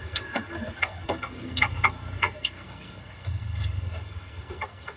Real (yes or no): no